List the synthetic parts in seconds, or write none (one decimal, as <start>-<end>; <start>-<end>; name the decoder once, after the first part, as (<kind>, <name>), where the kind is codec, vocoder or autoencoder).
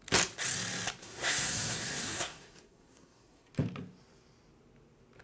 1.0-3.5 (codec, SNAC)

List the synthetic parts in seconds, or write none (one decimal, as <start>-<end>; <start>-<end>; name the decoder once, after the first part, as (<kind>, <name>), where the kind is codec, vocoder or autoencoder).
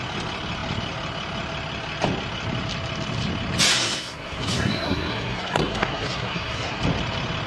3.7-6.8 (codec, SNAC)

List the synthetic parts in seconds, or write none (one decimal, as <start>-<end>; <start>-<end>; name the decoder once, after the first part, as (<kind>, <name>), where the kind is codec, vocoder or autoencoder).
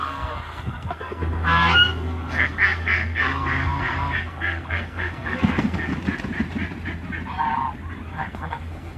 0.0-5.9 (codec, SNAC); 8.1-9.0